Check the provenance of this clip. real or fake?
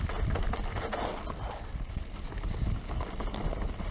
real